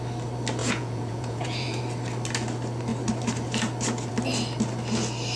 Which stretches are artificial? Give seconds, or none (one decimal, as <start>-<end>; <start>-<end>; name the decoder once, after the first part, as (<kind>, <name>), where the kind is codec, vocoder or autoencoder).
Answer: 0.6-1.8 (vocoder, Vocos)